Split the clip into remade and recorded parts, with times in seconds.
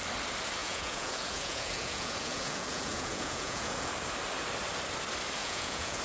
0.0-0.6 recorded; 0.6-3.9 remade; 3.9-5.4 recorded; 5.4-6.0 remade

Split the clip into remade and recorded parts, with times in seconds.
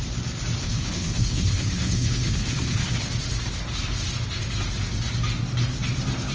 0.0-0.6 recorded; 0.6-3.1 remade; 3.1-6.3 recorded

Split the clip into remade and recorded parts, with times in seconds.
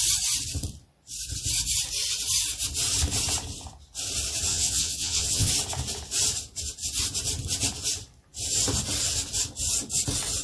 0.0-4.5 recorded; 4.5-5.5 remade; 5.5-10.4 recorded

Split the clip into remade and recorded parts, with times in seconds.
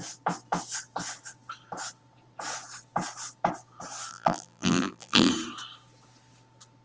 0.0-4.1 recorded; 4.1-5.3 remade; 5.3-6.8 recorded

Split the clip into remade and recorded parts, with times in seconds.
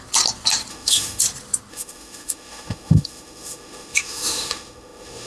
0.0-0.7 recorded; 0.7-1.2 remade; 1.2-1.7 recorded; 1.7-5.3 remade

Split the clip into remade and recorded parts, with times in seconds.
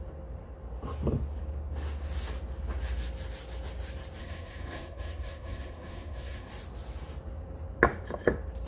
0.0-4.2 recorded; 4.2-6.5 remade; 6.5-8.7 recorded